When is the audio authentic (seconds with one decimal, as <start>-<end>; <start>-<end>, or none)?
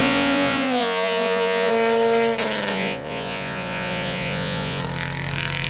1.7-2.7; 4.8-5.7